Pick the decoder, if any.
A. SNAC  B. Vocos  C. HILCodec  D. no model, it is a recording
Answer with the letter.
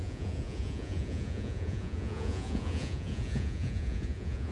B